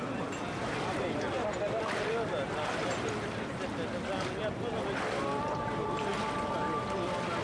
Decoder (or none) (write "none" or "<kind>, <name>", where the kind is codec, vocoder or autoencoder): none